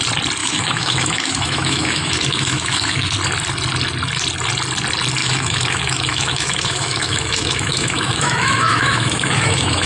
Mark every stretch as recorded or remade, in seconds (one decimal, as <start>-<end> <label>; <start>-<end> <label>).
0.0-0.4 recorded; 0.4-3.1 remade; 3.1-5.2 recorded; 5.2-9.9 remade